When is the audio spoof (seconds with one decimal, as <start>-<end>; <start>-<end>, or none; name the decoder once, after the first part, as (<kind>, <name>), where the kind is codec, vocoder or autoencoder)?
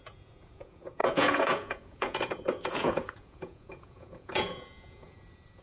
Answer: 0.0-5.6 (vocoder, Vocos)